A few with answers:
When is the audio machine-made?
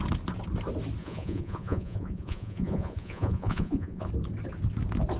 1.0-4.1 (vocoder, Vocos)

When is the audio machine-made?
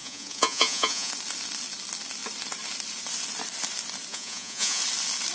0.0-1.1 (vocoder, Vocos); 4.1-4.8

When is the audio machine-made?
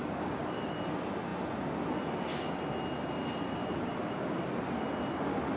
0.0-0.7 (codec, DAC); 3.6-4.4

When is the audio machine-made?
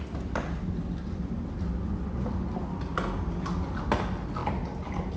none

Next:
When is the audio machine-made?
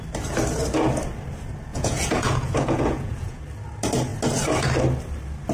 1.7-3.4 (vocoder, Vocos)